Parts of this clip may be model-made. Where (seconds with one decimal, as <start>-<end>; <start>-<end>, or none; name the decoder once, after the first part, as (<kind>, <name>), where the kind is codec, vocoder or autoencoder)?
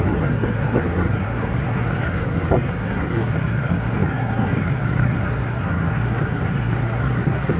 0.0-7.6 (codec, SNAC)